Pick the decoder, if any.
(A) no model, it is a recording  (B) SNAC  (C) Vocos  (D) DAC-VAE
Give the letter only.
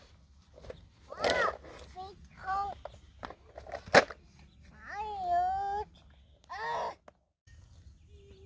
A